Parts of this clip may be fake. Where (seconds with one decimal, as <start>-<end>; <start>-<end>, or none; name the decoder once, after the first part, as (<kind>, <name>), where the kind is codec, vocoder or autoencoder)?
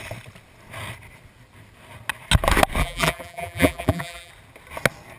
2.8-4.3 (vocoder, BigVGAN v2)